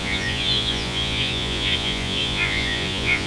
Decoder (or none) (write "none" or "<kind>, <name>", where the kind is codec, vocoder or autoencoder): vocoder, Vocos